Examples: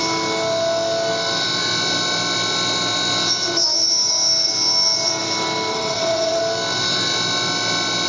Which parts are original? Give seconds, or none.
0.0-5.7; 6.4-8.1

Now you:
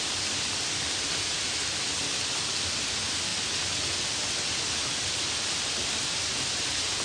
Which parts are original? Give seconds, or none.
0.0-7.0

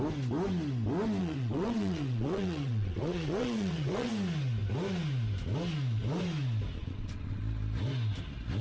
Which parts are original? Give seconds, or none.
0.0-1.2; 4.1-6.8; 7.4-8.6

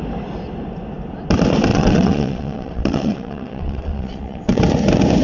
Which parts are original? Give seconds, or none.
0.0-1.7; 4.6-5.2

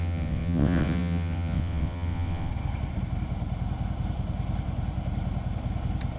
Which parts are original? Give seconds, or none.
2.5-6.2